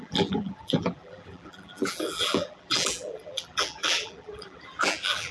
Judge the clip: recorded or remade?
remade